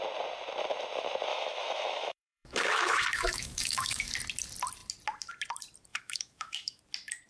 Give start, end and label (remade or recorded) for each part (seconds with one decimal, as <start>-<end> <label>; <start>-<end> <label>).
0.0-1.3 recorded; 1.3-4.1 remade; 4.1-5.9 recorded; 5.9-6.8 remade; 6.8-7.3 recorded